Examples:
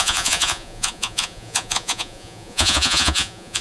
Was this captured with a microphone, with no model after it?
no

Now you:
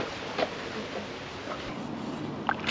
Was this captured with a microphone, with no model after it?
yes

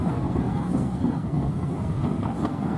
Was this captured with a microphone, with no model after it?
no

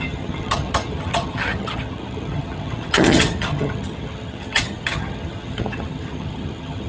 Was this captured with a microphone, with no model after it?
no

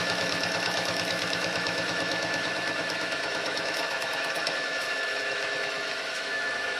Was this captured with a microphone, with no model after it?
no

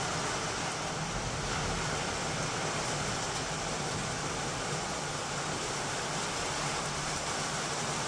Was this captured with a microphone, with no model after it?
yes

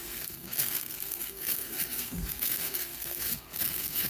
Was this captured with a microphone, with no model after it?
no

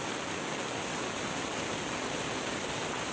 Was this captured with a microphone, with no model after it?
yes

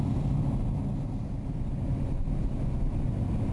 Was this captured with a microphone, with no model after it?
yes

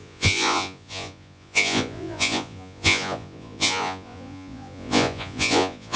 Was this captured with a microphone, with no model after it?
no